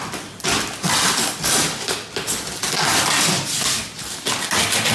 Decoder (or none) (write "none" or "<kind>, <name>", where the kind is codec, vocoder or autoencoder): none